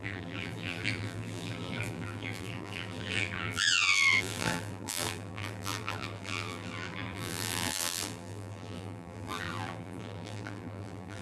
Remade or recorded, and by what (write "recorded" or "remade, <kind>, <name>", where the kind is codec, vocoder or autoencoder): remade, vocoder, BigVGAN v2